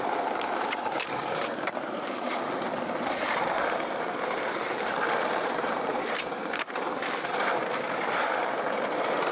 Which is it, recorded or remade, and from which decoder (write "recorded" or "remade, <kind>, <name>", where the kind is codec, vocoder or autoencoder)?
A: remade, vocoder, BigVGAN v2